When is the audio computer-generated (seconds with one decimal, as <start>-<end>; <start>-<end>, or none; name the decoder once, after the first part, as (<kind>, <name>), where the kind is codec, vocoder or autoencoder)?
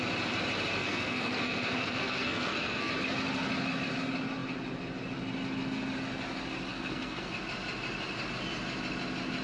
0.8-2.9 (codec, SNAC); 6.7-7.3